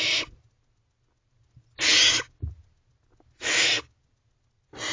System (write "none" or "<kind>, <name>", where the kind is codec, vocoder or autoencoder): none